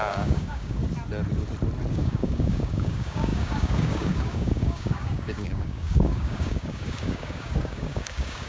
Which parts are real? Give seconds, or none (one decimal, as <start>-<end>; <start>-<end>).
0.8-1.9